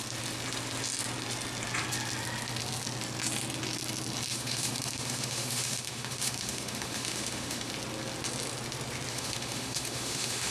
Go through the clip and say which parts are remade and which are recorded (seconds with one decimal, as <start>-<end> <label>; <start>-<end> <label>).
0.0-4.3 recorded; 4.3-7.7 remade; 7.7-9.1 recorded; 9.1-10.5 remade

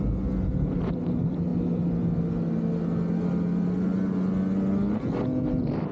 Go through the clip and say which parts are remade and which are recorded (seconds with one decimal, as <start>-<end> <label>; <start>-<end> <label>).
0.0-5.9 recorded

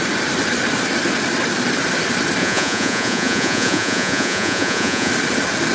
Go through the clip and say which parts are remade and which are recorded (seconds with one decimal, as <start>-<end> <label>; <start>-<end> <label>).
0.0-2.4 recorded; 2.4-5.1 remade; 5.1-5.7 recorded